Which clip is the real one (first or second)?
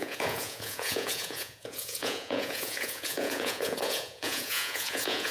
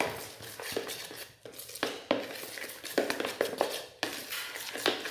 second